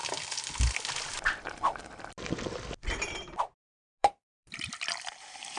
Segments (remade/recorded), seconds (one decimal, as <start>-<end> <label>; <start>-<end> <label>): 0.0-4.0 recorded; 4.0-4.7 remade; 4.7-5.6 recorded